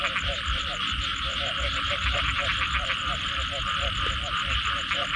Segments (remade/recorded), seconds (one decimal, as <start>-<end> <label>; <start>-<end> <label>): 0.0-0.6 remade; 0.6-5.2 recorded